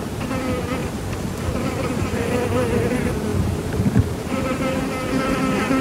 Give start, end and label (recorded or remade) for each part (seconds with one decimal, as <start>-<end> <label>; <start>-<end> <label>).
0.0-0.8 recorded; 0.8-2.4 remade; 2.4-4.2 recorded; 4.2-4.8 remade; 4.8-5.8 recorded